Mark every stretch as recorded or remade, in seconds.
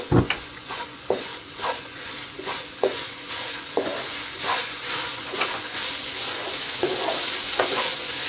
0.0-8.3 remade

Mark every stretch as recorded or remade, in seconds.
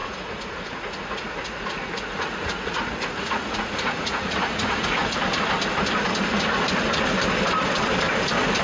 0.0-5.2 remade; 5.2-8.6 recorded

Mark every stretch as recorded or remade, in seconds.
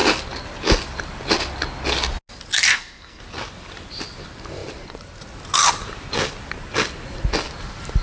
0.0-2.7 recorded; 2.7-3.2 remade; 3.2-8.0 recorded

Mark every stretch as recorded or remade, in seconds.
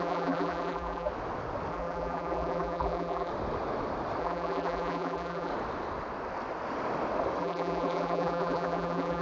0.0-1.1 remade; 1.1-1.7 recorded; 1.7-3.3 remade; 3.3-4.2 recorded; 4.2-5.5 remade; 5.5-7.4 recorded; 7.4-9.2 remade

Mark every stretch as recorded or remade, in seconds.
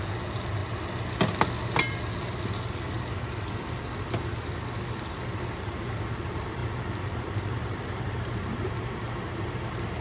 0.0-0.6 remade; 0.6-5.5 recorded; 5.5-10.0 remade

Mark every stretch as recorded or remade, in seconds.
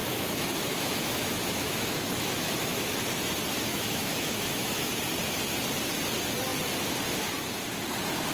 0.0-2.9 remade; 2.9-3.7 recorded; 3.7-4.9 remade; 4.9-8.3 recorded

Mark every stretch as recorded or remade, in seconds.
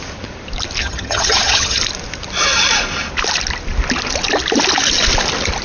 0.0-0.8 recorded; 0.8-1.8 remade; 1.8-5.6 recorded